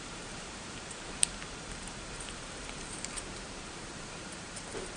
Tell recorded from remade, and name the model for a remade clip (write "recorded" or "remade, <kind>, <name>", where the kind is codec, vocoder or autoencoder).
remade, vocoder, BigVGAN v2